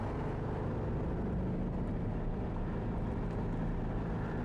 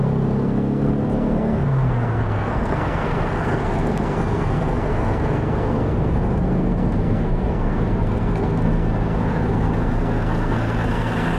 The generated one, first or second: second